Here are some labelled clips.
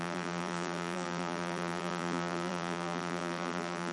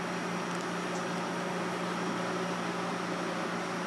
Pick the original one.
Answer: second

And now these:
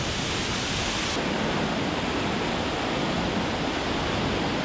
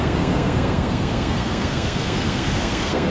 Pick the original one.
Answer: first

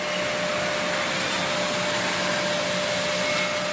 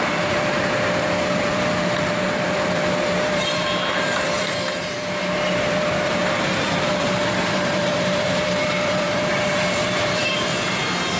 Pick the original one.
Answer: first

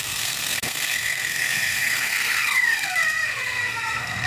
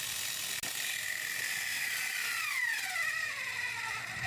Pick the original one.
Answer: second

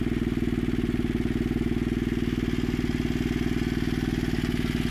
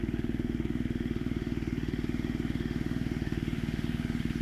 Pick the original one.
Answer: first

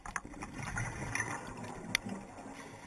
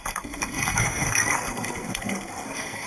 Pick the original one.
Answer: first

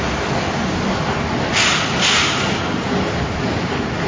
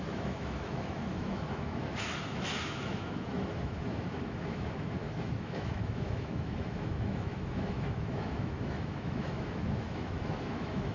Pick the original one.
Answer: first